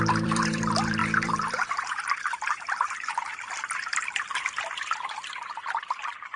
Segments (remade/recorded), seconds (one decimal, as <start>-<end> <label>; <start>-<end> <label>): 0.0-3.3 remade; 3.3-6.0 recorded; 6.0-6.4 remade